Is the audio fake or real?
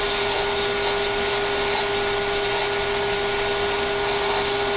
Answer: real